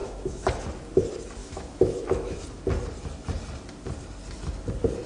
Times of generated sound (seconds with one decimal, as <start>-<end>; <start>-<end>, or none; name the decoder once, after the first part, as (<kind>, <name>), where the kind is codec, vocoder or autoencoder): 0.0-0.5 (autoencoder, DAC-VAE); 1.4-2.4